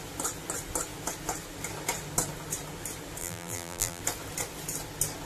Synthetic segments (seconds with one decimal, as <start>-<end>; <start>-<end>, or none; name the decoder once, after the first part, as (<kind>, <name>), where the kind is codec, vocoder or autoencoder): 3.2-4.0 (vocoder, BigVGAN v2)